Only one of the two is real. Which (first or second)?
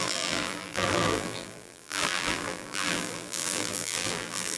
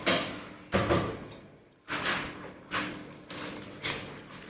second